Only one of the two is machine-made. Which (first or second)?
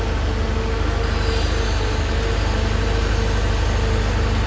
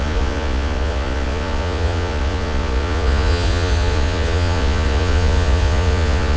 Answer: second